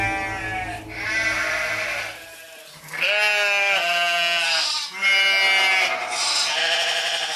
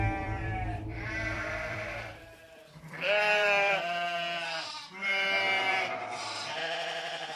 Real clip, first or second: first